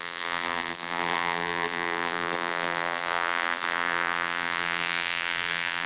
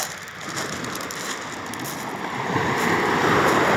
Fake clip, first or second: first